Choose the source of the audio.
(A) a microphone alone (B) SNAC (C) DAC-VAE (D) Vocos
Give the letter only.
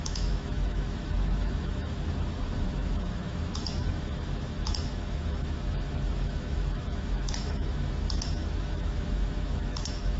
C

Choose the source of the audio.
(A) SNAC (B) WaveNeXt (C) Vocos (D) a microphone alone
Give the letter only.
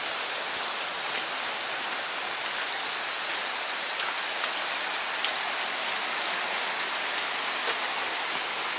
D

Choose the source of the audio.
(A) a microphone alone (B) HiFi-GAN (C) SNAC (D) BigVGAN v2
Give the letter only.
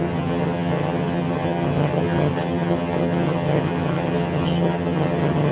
B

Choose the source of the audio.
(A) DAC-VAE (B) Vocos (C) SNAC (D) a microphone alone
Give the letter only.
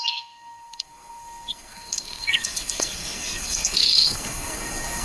C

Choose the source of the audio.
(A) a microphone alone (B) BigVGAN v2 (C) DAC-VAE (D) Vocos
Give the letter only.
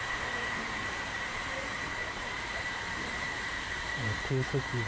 B